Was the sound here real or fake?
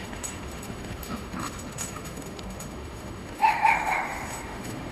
fake